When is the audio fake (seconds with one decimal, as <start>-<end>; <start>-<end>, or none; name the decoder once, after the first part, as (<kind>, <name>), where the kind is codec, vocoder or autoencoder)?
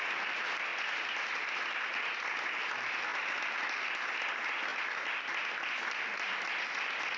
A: none